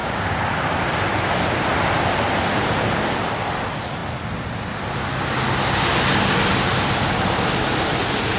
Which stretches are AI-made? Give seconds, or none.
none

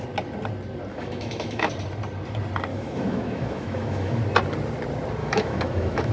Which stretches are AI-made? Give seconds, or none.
0.9-1.7 (autoencoder, DAC-VAE); 2.7-4.2; 5.2-6.1

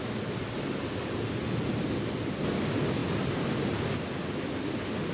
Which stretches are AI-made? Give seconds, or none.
none

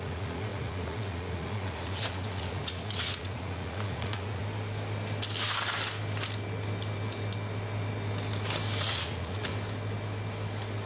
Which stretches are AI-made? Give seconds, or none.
0.0-4.4 (vocoder, Vocos); 8.8-9.5

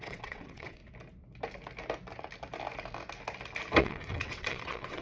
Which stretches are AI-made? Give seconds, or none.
0.0-0.8 (vocoder, WaveNeXt); 3.8-5.0

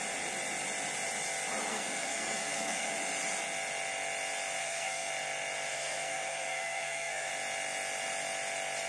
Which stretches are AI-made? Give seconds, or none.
1.7-2.9 (codec, SNAC); 4.6-5.1; 5.7-7.3

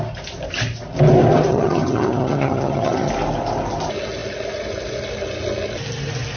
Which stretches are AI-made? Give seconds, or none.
1.5-3.1 (vocoder, HiFi-GAN)

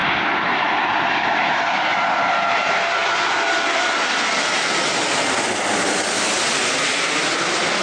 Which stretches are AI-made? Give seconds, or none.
none